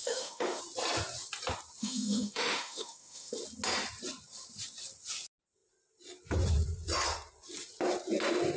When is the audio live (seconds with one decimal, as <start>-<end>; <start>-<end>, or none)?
0.6-1.8; 3.3-8.6